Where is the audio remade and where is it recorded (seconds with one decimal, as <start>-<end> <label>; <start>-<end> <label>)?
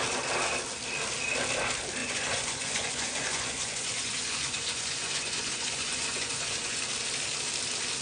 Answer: 0.0-2.0 recorded; 2.0-6.8 remade; 6.8-8.0 recorded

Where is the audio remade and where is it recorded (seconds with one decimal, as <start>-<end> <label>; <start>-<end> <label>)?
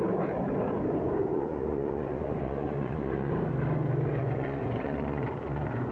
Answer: 0.0-1.3 recorded; 1.3-3.3 remade; 3.3-4.2 recorded; 4.2-5.9 remade